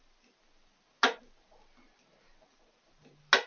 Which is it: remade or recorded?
recorded